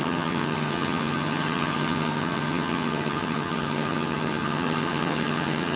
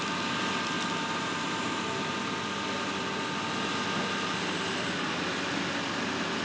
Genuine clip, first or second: second